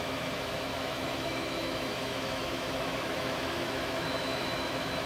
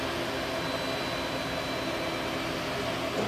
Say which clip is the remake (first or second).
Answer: first